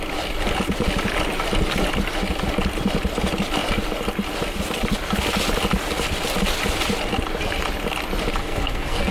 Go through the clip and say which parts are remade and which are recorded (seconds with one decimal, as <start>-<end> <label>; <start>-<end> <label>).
0.0-8.4 recorded; 8.4-9.1 remade